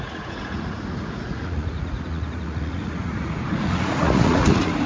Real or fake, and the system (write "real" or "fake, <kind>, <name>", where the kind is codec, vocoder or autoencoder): fake, vocoder, Vocos